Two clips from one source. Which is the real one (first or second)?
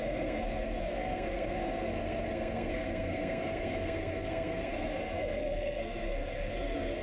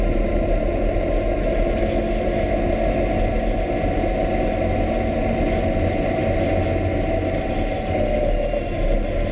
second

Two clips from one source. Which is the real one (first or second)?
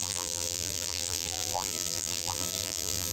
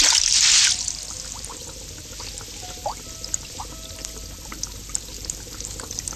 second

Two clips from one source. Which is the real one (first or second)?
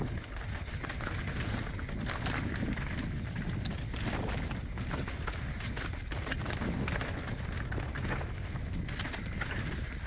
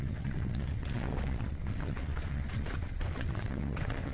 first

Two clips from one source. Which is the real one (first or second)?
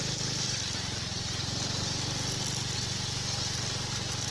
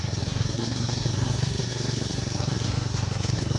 first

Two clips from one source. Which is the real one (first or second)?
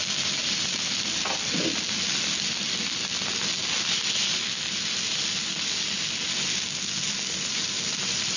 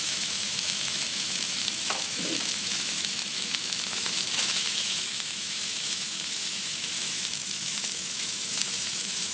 first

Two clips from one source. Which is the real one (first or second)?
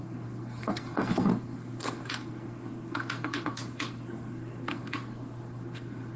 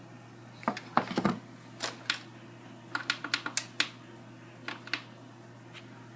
second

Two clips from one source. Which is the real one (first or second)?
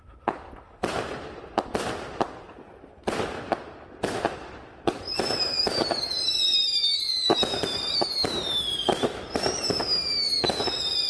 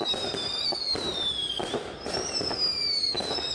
first